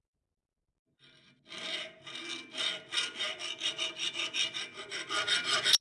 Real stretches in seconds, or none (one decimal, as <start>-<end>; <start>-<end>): 0.0-3.3; 4.1-4.9